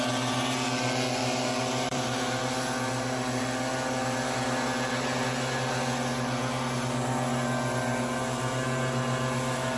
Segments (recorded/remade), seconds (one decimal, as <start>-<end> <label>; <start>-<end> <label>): 0.0-1.2 recorded; 1.2-2.4 remade; 2.4-9.8 recorded